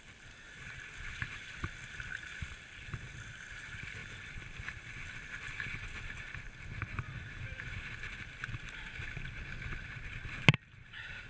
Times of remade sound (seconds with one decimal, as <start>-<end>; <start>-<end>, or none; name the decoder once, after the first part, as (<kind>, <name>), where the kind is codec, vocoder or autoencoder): none